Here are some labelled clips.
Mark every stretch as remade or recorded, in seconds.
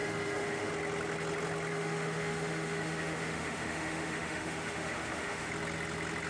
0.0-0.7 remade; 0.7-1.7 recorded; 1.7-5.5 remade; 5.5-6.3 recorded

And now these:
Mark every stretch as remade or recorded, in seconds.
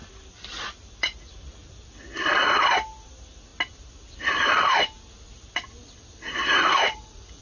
0.0-6.4 recorded; 6.4-7.4 remade